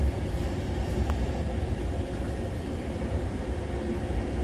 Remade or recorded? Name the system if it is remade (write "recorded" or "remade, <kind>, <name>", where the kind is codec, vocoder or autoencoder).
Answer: remade, vocoder, BigVGAN v2